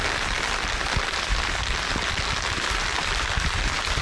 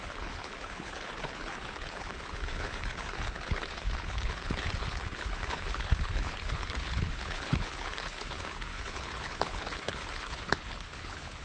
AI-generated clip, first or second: second